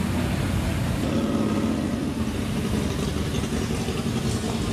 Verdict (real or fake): real